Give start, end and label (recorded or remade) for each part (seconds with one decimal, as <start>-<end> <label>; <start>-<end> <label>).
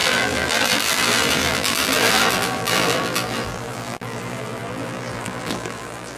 0.0-6.2 remade